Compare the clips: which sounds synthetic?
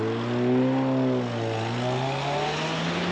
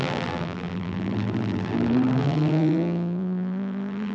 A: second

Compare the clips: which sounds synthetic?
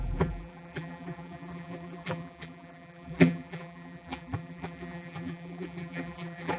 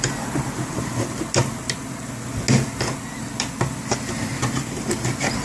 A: first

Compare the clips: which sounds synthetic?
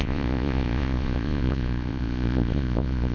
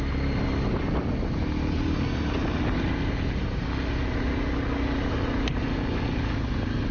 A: first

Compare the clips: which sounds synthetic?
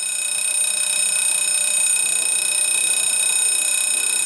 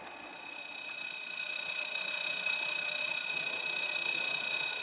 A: second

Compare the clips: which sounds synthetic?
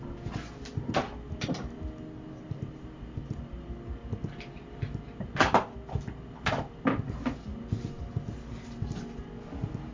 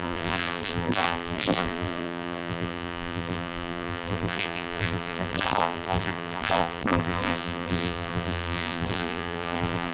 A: second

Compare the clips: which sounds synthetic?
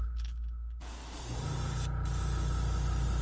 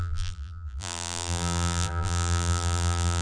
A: second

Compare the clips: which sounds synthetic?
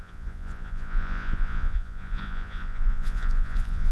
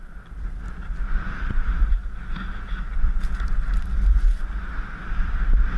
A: first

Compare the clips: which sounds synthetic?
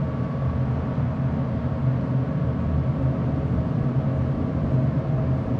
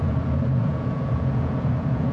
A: second